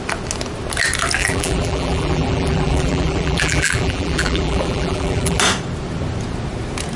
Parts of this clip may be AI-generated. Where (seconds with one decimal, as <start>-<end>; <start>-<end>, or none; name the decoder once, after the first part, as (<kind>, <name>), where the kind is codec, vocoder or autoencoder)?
1.2-5.4 (vocoder, BigVGAN v2)